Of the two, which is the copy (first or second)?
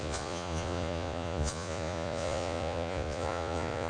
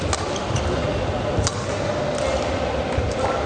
first